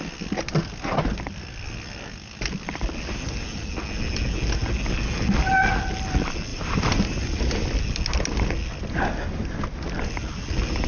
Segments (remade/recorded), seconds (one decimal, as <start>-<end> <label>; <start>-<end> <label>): 0.0-6.5 recorded; 6.5-7.3 remade; 7.3-10.9 recorded